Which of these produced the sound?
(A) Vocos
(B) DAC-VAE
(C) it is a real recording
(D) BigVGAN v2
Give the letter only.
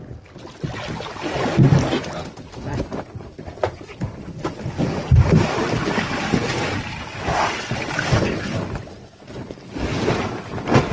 C